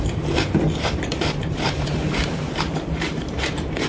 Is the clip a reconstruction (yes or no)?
yes